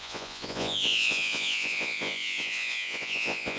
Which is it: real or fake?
fake